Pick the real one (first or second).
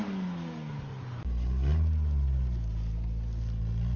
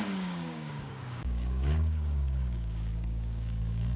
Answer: first